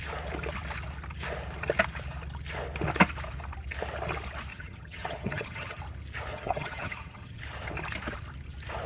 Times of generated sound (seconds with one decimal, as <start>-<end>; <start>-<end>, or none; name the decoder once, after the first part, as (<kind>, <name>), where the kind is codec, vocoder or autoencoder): 4.5-5.8 (vocoder, HiFi-GAN); 6.3-7.4